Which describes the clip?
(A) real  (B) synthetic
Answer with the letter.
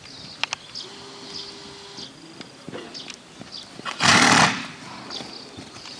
A